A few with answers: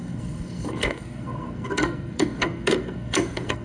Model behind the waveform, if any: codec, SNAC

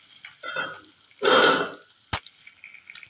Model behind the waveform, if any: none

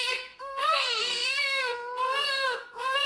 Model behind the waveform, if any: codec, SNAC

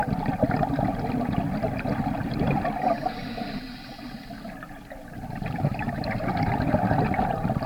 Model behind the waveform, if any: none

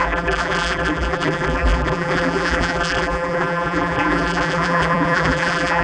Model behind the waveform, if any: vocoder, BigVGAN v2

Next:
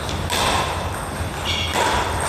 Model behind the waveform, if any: none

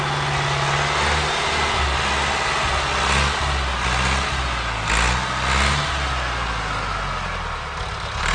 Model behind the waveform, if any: none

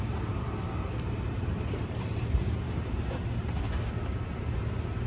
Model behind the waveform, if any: vocoder, BigVGAN v2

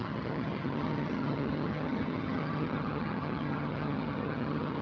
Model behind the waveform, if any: vocoder, HiFi-GAN